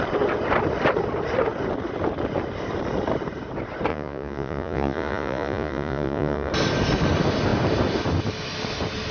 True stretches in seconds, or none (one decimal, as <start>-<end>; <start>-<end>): 0.0-3.9; 6.5-9.1